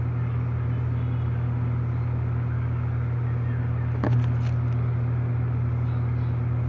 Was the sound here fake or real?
real